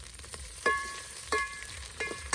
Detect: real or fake fake